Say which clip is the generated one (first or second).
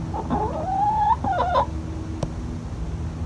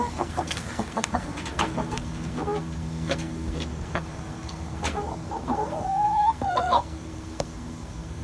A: second